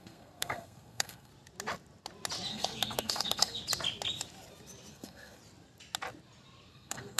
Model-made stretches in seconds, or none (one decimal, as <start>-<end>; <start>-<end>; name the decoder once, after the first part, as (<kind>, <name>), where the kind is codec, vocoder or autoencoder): 0.0-1.3 (codec, SNAC); 2.5-3.6; 4.9-5.4; 6.7-7.2